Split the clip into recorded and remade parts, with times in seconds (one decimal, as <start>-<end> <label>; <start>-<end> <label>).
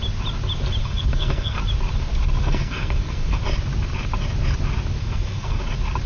0.0-0.8 recorded; 0.8-1.6 remade; 1.6-2.4 recorded; 2.4-3.4 remade; 3.4-5.0 recorded; 5.0-5.6 remade; 5.6-6.1 recorded